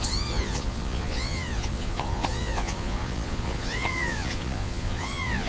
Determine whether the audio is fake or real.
fake